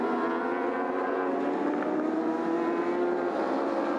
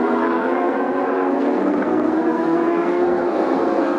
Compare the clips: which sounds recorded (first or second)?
first